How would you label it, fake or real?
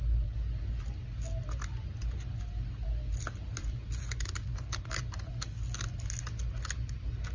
real